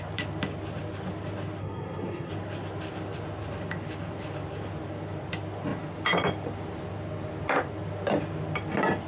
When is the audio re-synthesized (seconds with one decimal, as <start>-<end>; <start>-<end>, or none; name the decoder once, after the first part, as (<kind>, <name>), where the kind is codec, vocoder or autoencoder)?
1.6-2.3 (codec, SNAC)